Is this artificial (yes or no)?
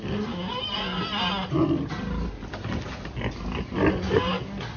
no